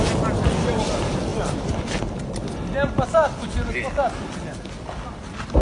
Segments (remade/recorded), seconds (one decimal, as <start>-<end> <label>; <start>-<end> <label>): 0.0-5.6 recorded